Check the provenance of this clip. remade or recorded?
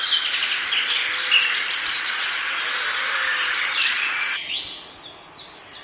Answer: recorded